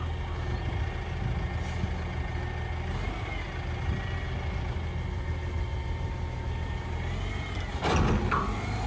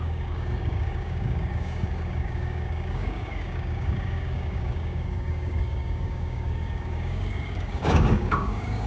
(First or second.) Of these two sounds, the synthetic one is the second